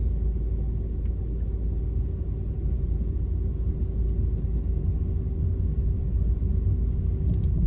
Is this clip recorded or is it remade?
recorded